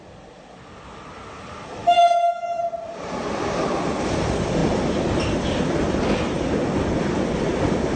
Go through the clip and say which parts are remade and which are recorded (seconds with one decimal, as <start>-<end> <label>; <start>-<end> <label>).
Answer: 0.0-1.8 recorded; 1.8-2.6 remade; 2.6-8.0 recorded